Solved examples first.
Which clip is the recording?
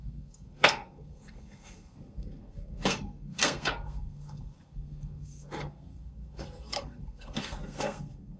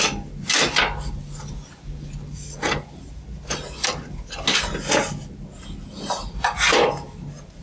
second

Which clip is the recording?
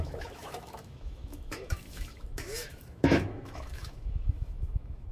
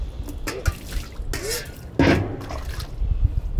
second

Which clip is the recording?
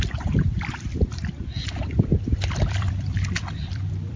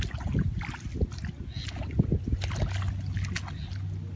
second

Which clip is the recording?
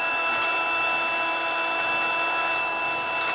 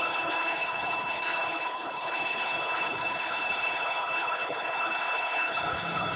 first